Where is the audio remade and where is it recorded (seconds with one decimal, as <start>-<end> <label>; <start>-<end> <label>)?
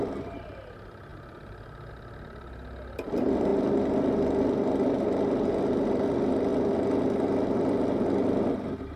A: 0.0-9.0 recorded